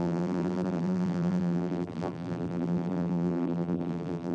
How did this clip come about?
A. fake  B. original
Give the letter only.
A